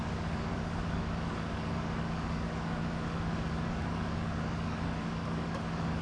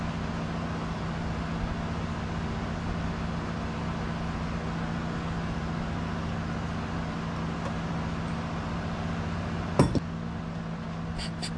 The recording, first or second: second